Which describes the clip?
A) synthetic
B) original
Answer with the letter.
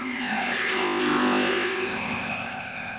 A